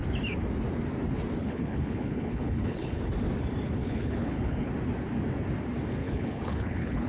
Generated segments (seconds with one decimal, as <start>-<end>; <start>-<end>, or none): 1.4-3.0; 3.8-4.7; 6.0-7.1